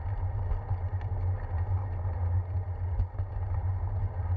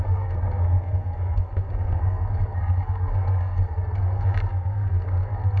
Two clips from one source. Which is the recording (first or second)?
first